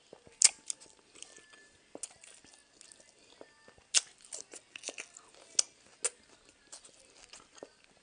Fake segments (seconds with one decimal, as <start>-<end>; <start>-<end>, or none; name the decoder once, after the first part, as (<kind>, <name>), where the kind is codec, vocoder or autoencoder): none